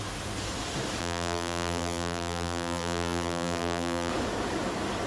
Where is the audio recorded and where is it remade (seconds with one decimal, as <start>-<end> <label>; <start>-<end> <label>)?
0.0-1.0 recorded; 1.0-4.1 remade; 4.1-5.1 recorded